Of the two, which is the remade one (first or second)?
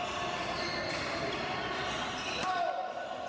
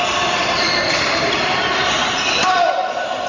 second